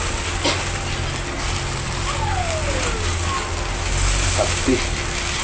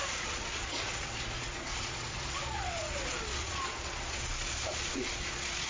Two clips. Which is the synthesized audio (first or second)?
second